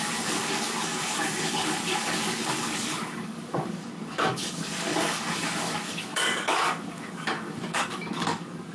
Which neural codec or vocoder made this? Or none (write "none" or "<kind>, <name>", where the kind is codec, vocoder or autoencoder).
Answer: codec, DAC